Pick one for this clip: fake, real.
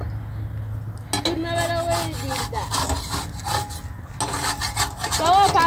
real